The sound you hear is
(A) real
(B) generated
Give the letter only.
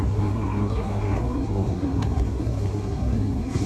B